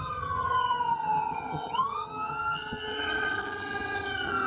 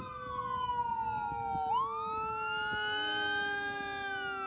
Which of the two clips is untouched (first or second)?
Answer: second